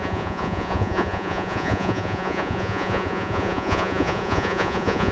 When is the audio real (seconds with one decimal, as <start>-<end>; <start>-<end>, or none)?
none